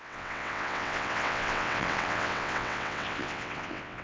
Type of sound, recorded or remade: remade